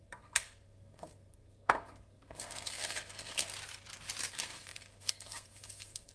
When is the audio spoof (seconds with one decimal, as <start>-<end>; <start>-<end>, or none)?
0.0-3.5; 4.3-6.1